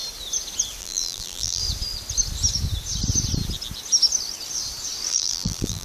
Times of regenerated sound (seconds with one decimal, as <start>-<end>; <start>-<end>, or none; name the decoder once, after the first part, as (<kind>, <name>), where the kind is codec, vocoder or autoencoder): 0.8-1.6 (vocoder, BigVGAN v2); 5.1-5.8